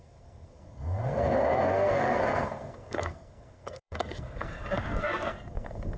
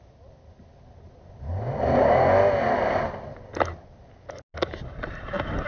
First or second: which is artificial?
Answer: first